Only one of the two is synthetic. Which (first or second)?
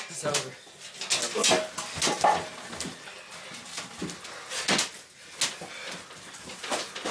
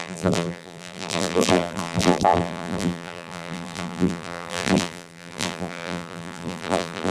second